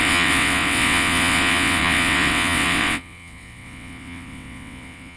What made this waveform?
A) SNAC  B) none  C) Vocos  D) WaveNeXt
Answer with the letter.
D